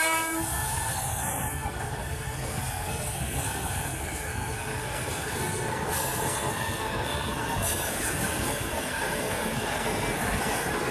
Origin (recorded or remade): remade